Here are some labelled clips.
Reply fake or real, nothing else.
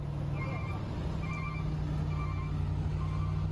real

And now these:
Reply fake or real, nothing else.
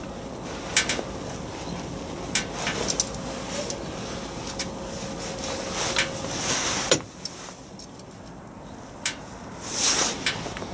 real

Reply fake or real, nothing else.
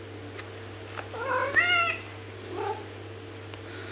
real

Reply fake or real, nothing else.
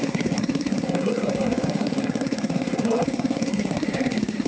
fake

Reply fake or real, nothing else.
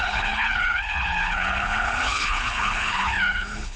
fake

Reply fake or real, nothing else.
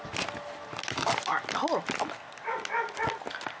real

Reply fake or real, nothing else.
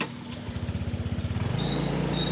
real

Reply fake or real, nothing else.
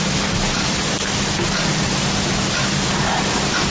real